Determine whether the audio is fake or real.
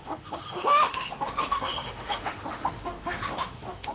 fake